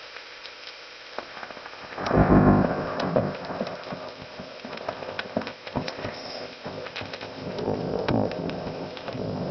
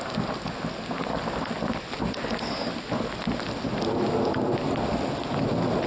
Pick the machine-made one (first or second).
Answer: first